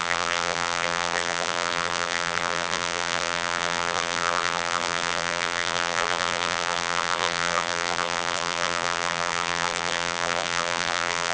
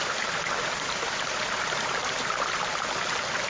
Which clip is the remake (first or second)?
first